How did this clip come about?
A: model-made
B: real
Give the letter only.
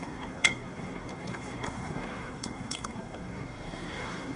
A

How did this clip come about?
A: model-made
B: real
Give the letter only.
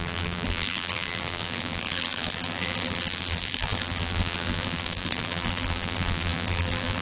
A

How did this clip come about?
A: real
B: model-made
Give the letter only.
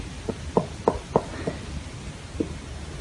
A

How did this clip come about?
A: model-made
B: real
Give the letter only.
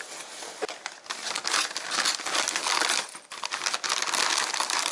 B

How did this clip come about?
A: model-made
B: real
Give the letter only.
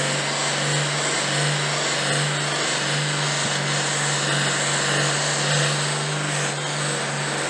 B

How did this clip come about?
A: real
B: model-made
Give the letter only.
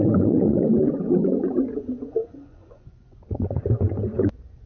B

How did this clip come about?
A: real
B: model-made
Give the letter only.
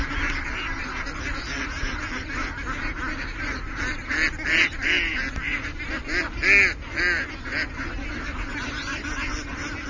A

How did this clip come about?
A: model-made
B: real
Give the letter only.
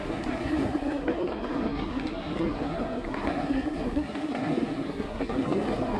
A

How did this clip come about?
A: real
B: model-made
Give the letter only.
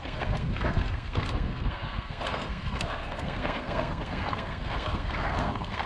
B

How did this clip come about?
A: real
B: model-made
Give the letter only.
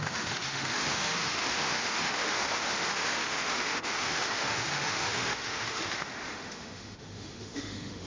B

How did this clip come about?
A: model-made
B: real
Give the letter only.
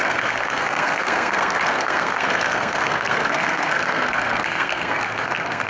A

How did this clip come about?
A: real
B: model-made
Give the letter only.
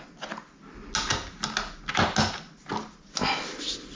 A